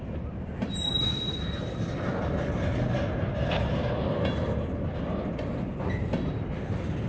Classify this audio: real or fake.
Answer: real